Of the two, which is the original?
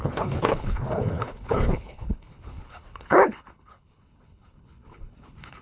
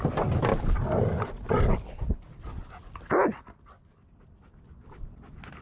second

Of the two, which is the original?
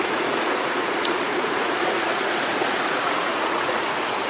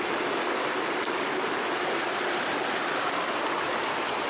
second